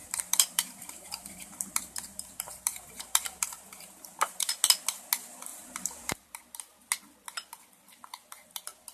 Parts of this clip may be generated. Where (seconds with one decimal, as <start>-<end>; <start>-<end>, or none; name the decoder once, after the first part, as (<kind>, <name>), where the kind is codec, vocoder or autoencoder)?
0.0-4.5 (vocoder, BigVGAN v2); 5.5-6.4